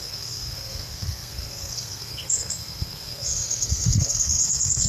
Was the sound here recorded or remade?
remade